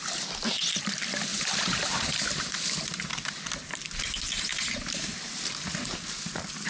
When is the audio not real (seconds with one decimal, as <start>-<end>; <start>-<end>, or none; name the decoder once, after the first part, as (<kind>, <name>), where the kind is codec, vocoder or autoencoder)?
1.3-2.7 (vocoder, BigVGAN v2); 4.5-5.3